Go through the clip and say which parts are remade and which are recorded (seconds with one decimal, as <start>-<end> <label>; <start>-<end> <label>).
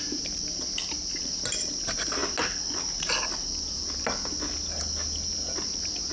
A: 0.0-6.1 recorded